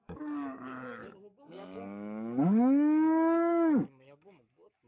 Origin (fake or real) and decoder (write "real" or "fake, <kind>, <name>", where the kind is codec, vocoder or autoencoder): fake, codec, DAC